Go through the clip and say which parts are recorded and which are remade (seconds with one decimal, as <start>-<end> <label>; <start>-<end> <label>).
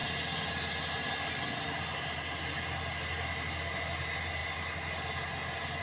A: 0.0-5.8 recorded